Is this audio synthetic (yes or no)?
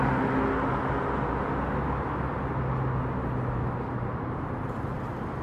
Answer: no